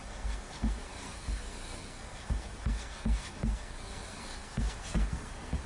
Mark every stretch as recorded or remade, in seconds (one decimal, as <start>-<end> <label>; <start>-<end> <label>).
0.0-5.7 remade

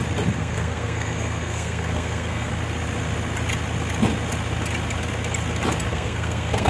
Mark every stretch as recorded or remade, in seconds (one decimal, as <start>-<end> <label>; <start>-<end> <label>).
0.0-0.4 recorded; 0.4-2.5 remade; 2.5-5.9 recorded; 5.9-6.7 remade

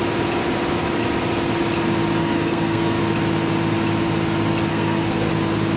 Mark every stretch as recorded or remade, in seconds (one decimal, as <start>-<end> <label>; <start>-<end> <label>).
0.0-2.2 recorded; 2.2-3.0 remade; 3.0-4.7 recorded; 4.7-5.3 remade; 5.3-5.8 recorded

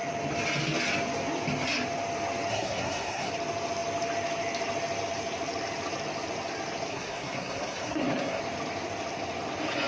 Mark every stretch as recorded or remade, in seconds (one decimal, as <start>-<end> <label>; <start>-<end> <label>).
0.0-2.5 recorded; 2.5-3.3 remade; 3.3-6.9 recorded; 6.9-8.4 remade; 8.4-9.9 recorded